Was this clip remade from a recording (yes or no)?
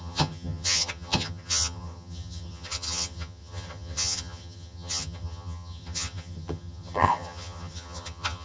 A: yes